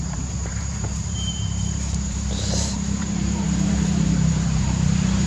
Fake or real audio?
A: fake